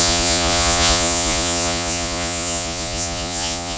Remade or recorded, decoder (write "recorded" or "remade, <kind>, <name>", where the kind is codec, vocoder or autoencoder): remade, vocoder, Vocos